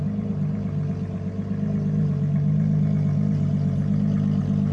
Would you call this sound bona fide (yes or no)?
yes